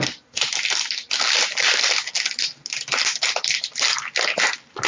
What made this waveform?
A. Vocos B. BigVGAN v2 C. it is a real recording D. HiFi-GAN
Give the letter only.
C